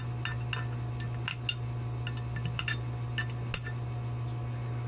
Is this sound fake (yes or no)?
no